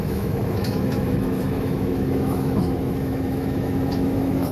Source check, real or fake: fake